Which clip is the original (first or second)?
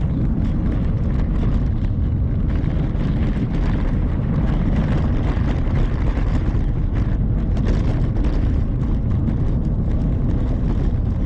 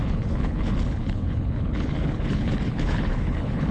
first